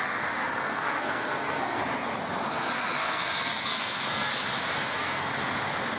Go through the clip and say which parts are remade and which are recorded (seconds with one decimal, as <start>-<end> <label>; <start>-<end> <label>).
0.0-1.8 remade; 1.8-2.5 recorded; 2.5-4.3 remade; 4.3-4.8 recorded; 4.8-5.3 remade; 5.3-6.0 recorded